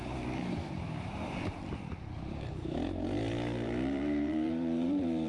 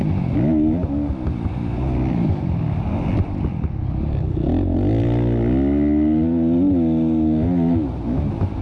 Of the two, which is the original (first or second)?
second